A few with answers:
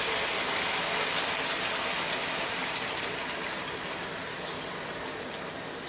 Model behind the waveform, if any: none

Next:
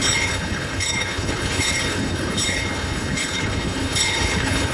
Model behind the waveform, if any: codec, HILCodec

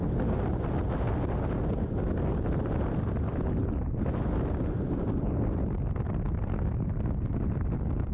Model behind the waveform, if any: none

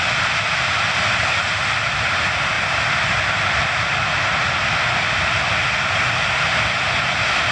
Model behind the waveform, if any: none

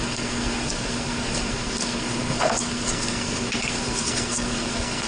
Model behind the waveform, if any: codec, SNAC